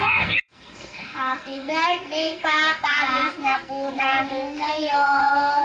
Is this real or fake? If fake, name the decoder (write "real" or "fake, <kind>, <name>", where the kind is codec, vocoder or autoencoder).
fake, codec, SNAC